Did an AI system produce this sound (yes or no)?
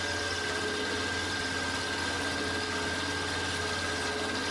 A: no